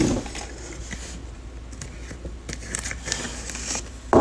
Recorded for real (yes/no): yes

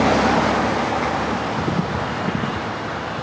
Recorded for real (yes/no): yes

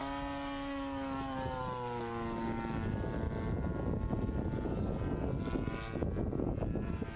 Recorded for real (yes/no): yes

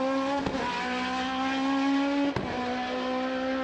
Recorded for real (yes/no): yes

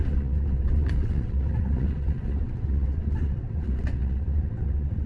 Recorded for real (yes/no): no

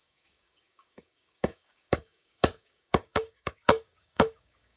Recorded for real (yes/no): no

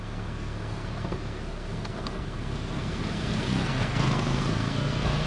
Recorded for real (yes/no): no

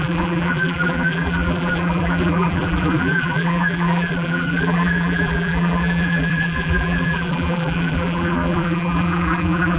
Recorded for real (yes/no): no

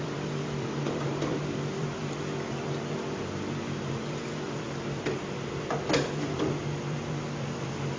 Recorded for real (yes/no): no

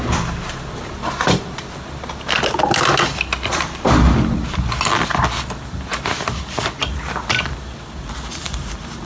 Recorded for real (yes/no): yes